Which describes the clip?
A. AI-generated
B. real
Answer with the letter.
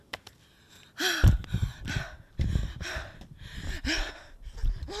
B